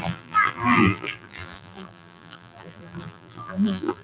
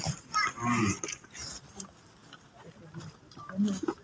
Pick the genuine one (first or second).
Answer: second